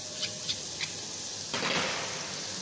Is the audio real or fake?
real